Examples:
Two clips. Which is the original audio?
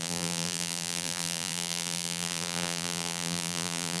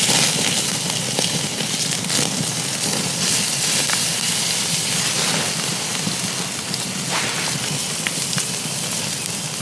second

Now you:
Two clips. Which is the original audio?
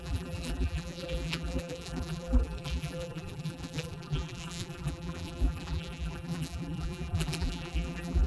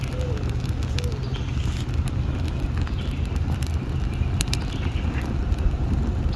second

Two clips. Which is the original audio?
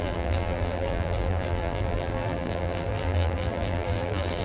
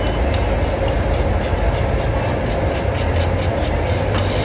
second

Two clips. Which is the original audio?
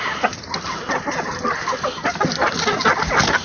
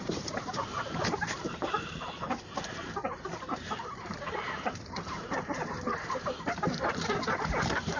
first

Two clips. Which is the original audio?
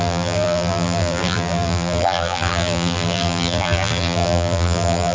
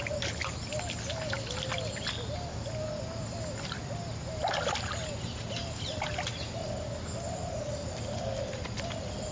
second